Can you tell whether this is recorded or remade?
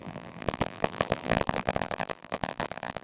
remade